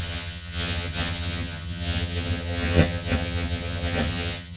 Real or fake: fake